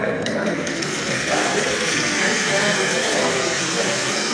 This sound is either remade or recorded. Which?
remade